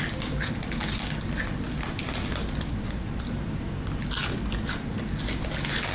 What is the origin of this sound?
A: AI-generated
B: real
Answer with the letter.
B